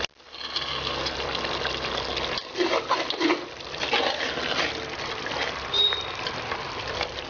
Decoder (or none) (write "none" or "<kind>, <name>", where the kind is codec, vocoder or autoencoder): none